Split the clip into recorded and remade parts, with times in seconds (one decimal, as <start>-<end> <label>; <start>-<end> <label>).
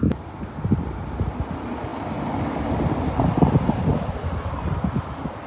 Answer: 0.0-5.5 recorded